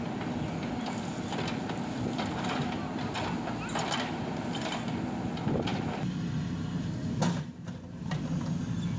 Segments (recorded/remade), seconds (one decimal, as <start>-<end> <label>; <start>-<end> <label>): 0.0-9.0 recorded